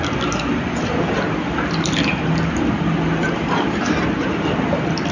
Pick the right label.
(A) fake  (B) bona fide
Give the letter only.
B